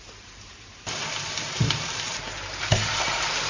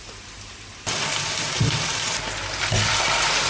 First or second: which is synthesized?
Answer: first